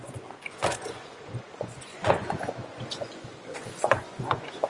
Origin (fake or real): fake